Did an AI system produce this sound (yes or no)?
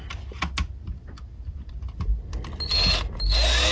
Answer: no